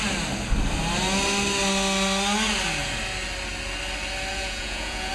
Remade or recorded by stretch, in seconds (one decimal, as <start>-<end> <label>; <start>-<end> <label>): 0.0-4.3 recorded; 4.3-5.1 remade

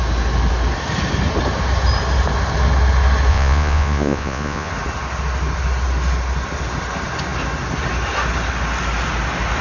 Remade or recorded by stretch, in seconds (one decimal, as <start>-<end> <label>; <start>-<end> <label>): 0.0-3.3 recorded; 3.3-4.7 remade; 4.7-9.6 recorded

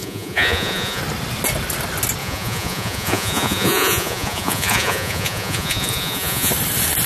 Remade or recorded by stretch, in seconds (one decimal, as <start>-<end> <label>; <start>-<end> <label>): 0.0-1.0 remade; 1.0-2.2 recorded; 2.2-6.5 remade; 6.5-7.1 recorded

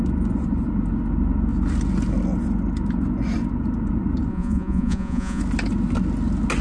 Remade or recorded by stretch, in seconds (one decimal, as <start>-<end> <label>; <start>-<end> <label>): 0.0-4.3 recorded; 4.3-5.4 remade; 5.4-6.6 recorded

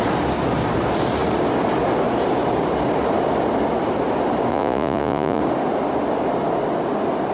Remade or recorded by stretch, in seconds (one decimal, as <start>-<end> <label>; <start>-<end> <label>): 0.0-4.5 recorded; 4.5-5.4 remade; 5.4-7.3 recorded

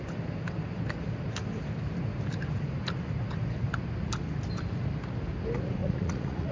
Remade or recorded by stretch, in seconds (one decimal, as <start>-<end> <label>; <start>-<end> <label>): 0.0-5.8 recorded; 5.8-6.5 remade

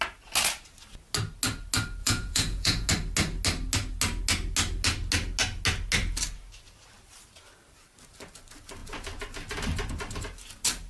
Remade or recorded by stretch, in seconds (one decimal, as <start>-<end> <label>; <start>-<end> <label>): 0.0-2.0 recorded; 2.0-2.9 remade; 2.9-10.9 recorded